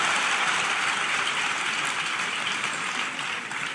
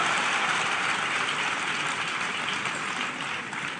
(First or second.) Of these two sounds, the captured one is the second